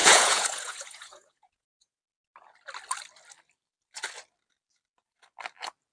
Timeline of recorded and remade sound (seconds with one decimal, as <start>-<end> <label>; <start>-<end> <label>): 0.0-2.0 remade; 2.0-5.9 recorded